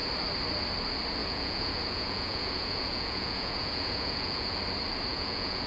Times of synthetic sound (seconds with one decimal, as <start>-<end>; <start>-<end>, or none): 1.2-4.6; 5.1-5.7